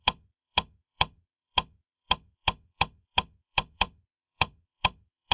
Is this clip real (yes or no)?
no